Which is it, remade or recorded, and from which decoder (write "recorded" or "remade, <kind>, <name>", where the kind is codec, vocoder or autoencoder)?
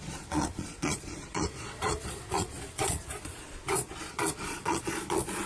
remade, vocoder, Vocos